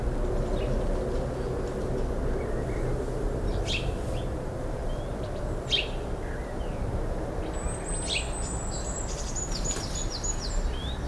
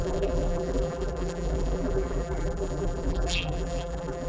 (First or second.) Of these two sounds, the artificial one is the second